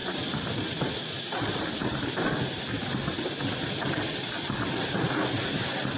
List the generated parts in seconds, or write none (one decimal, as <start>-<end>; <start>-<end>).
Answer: 0.0-2.1; 2.8-4.0